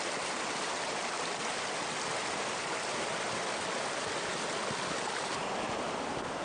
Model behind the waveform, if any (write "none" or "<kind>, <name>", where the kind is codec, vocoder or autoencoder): none